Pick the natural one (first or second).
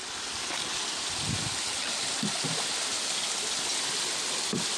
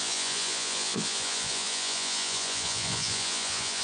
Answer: first